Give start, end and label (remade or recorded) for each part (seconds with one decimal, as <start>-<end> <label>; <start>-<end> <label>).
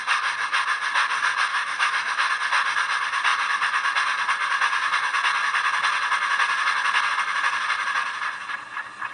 0.0-1.5 recorded; 1.5-2.3 remade; 2.3-9.1 recorded